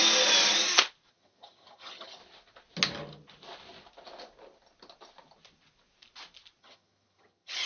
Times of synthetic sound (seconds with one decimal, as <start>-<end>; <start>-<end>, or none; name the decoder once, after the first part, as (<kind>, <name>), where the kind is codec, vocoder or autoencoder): 1.1-2.2 (vocoder, HiFi-GAN); 6.6-7.7